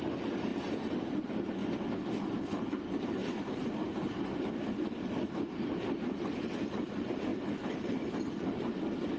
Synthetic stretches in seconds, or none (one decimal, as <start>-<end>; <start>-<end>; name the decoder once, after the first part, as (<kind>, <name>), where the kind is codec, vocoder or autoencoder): none